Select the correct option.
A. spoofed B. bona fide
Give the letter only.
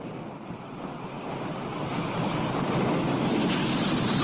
B